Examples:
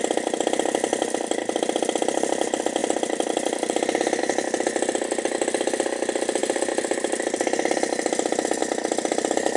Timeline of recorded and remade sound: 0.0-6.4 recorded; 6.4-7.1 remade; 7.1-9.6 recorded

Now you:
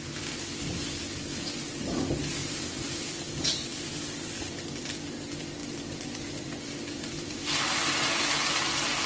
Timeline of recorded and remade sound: 0.0-2.4 recorded; 2.4-4.6 remade; 4.6-5.6 recorded; 5.6-8.2 remade; 8.2-9.1 recorded

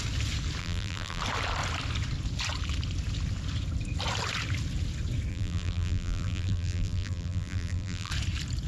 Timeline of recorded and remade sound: 0.0-0.6 recorded; 0.6-1.2 remade; 1.2-5.3 recorded; 5.3-8.1 remade; 8.1-8.7 recorded

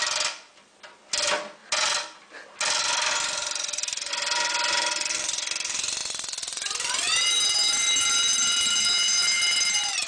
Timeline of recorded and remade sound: 0.0-10.1 recorded

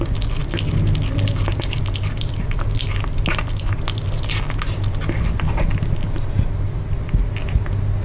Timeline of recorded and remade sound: 0.0-8.0 recorded

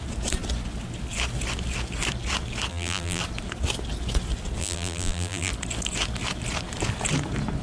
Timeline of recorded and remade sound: 0.0-2.7 recorded; 2.7-3.2 remade; 3.2-4.6 recorded; 4.6-5.5 remade; 5.5-7.6 recorded